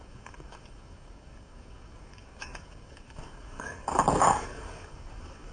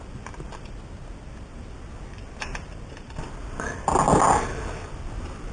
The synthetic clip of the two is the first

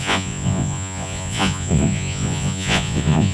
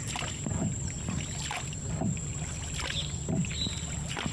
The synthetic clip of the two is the first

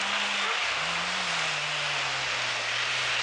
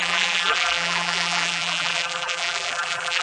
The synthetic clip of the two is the second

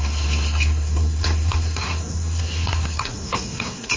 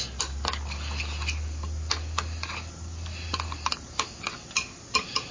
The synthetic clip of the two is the first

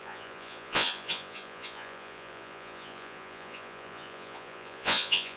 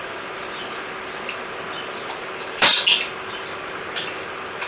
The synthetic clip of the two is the first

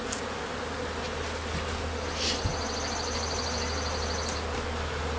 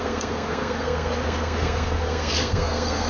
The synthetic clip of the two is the second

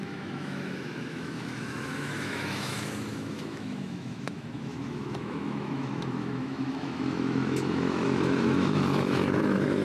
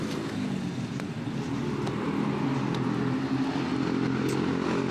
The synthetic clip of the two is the first